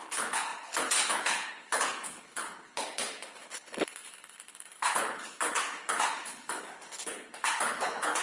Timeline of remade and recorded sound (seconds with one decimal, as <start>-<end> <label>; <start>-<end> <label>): 0.0-8.2 remade